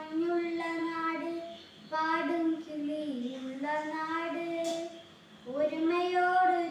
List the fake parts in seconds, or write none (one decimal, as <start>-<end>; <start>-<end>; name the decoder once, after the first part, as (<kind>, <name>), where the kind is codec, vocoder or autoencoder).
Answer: none